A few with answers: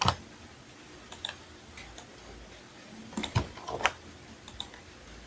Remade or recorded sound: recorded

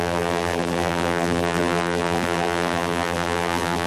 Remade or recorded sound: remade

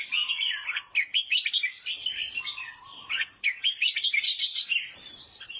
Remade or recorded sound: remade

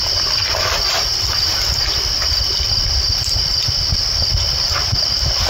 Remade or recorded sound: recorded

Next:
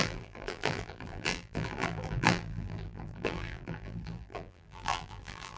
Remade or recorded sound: remade